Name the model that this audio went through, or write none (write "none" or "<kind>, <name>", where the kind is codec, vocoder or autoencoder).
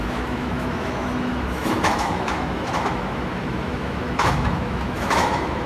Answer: autoencoder, DAC-VAE